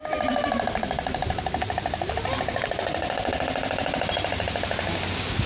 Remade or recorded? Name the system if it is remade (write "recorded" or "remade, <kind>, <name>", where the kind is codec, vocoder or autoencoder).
recorded